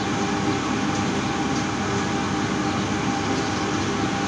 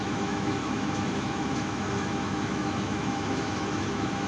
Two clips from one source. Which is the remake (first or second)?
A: second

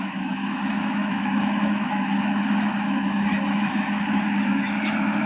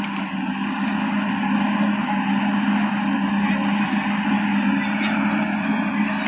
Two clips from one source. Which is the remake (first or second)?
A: first